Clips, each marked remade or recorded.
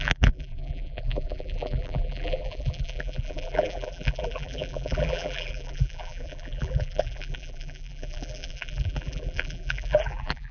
remade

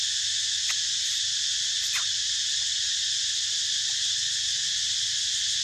recorded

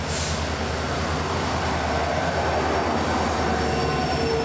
recorded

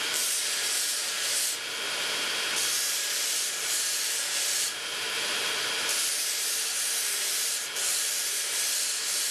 remade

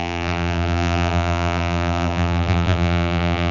remade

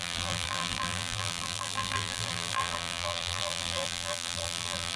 remade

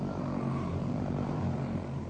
remade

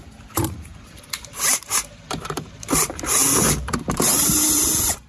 remade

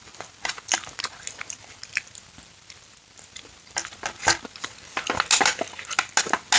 recorded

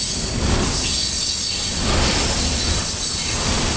recorded